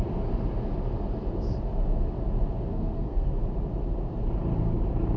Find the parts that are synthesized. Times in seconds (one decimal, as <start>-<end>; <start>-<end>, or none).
2.7-3.3